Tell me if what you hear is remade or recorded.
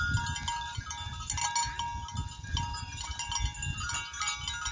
recorded